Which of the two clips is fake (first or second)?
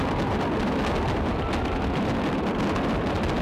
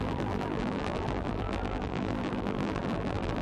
second